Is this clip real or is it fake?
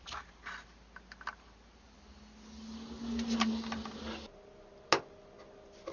real